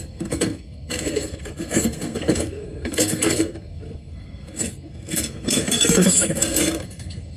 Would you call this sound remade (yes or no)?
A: yes